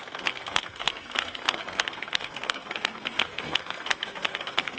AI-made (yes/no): yes